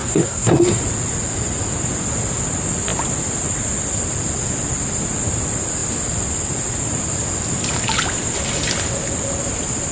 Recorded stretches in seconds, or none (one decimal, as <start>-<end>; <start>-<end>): 0.8-9.9